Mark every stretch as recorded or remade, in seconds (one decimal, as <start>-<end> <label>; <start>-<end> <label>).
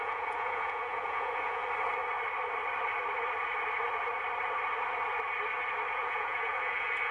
0.0-1.6 remade; 1.6-5.9 recorded; 5.9-7.1 remade